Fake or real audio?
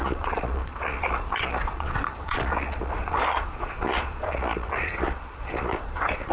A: fake